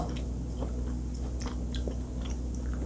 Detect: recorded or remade recorded